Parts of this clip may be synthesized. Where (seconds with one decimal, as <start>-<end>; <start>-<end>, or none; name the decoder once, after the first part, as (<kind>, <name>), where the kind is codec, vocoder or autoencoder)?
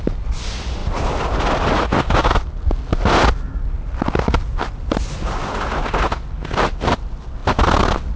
none